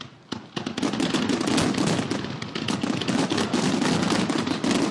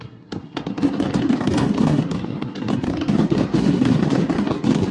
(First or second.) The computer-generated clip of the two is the second